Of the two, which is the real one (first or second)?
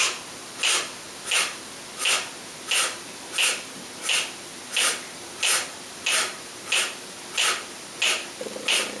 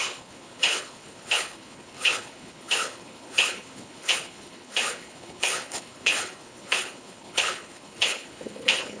first